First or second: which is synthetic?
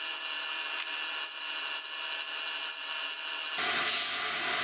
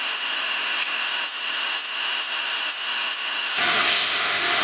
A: second